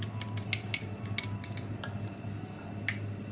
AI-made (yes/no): no